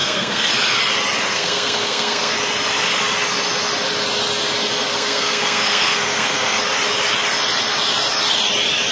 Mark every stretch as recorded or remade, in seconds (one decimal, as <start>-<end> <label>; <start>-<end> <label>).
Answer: 0.0-0.5 remade; 0.5-1.3 recorded; 1.3-2.3 remade; 2.3-4.9 recorded; 4.9-6.6 remade; 6.6-8.9 recorded